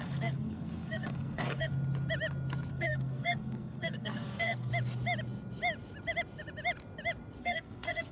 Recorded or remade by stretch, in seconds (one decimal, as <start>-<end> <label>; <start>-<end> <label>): 0.0-1.7 remade; 1.7-2.7 recorded; 2.7-4.7 remade; 4.7-7.4 recorded; 7.4-8.1 remade